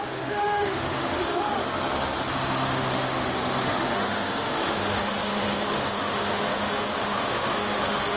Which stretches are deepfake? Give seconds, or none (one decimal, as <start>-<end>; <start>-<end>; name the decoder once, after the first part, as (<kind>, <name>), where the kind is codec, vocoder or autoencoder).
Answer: 0.0-1.5 (autoencoder, DAC-VAE); 2.3-8.2